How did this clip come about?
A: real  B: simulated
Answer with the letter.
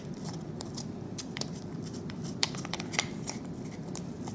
B